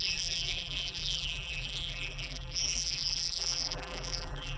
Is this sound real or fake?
fake